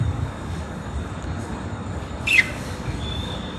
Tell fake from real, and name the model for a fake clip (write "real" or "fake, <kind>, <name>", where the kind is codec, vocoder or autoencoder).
fake, codec, DAC